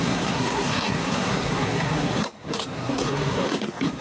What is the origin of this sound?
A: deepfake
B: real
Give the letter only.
A